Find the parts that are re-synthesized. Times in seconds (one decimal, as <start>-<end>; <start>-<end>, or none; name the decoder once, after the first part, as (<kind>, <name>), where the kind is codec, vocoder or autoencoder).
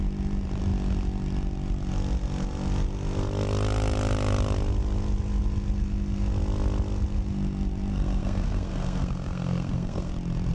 7.9-10.1 (codec, SNAC)